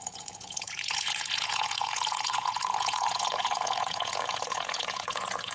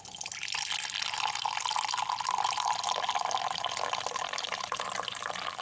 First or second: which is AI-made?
first